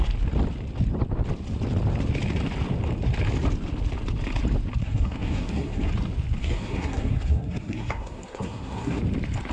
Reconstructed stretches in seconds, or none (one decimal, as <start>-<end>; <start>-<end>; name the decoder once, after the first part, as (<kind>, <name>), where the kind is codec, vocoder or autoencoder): 4.8-5.9 (codec, SNAC); 6.4-9.0